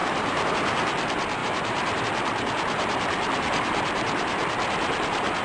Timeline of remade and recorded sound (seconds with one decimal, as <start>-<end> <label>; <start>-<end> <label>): 0.0-0.5 remade; 0.5-1.4 recorded; 1.4-2.0 remade; 2.0-5.4 recorded